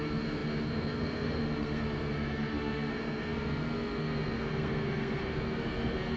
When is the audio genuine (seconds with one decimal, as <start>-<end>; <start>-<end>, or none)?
none

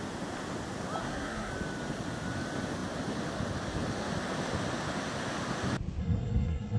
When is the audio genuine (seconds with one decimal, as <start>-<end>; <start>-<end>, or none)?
0.0-1.0; 1.5-6.0

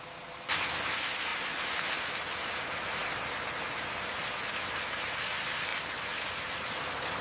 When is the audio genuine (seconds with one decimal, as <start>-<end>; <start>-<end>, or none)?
0.0-7.2

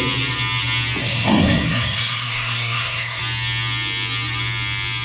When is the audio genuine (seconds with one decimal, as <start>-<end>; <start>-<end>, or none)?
0.0-1.0; 3.2-5.0